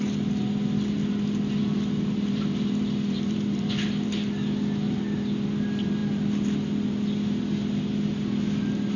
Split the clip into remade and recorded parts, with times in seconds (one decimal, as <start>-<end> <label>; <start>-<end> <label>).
0.0-1.6 recorded; 1.6-4.4 remade; 4.4-9.0 recorded